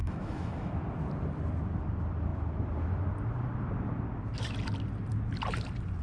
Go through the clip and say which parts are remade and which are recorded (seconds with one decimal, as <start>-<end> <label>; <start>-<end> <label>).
0.0-0.7 remade; 0.7-6.0 recorded